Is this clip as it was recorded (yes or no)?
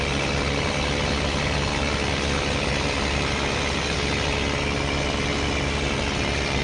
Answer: yes